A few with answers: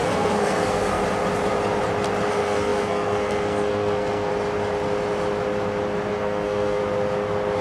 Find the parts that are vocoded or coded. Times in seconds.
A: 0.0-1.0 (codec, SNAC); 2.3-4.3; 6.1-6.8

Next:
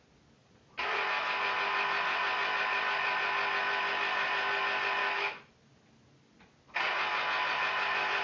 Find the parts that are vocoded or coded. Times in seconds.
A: 5.0-5.5 (autoencoder, DAC-VAE)